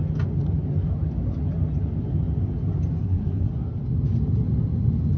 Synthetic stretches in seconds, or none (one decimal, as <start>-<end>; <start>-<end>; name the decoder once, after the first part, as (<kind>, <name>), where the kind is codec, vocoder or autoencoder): 3.0-3.5 (codec, SNAC)